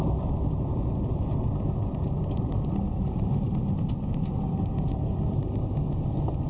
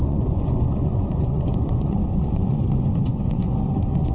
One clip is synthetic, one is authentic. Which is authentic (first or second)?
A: first